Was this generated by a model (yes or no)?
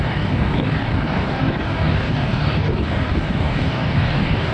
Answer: yes